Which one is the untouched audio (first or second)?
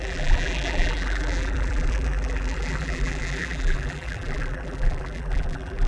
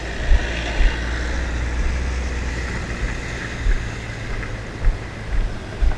second